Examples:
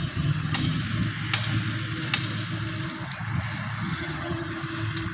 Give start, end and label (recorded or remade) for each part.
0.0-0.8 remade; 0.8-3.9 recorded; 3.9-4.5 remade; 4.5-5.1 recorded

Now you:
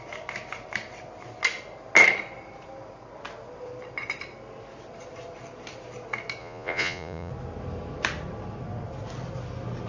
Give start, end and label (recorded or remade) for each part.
0.0-6.4 recorded; 6.4-7.3 remade; 7.3-9.9 recorded

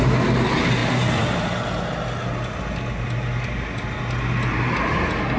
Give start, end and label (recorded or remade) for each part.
0.0-5.4 recorded

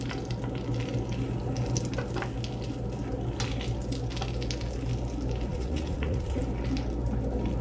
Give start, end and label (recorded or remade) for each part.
0.0-5.5 recorded; 5.5-6.4 remade; 6.4-7.6 recorded

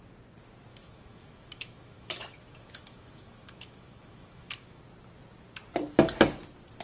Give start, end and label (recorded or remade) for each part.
0.0-0.7 recorded; 0.7-4.8 remade; 4.8-6.8 recorded

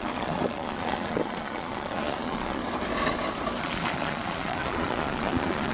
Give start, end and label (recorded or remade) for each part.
0.0-2.6 remade; 2.6-3.6 recorded; 3.6-5.7 remade

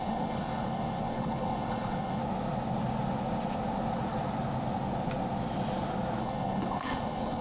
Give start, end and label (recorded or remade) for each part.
0.0-2.2 remade; 2.2-6.2 recorded; 6.2-7.4 remade